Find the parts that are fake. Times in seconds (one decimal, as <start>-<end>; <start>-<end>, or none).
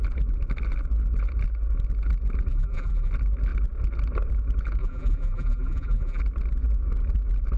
2.5-3.1; 4.8-6.2